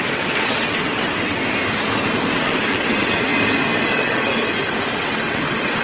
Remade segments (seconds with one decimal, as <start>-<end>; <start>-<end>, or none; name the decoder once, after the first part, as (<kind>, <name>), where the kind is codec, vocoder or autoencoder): 0.0-1.4 (vocoder, WaveNeXt); 2.3-3.3; 3.9-4.3; 5.0-5.8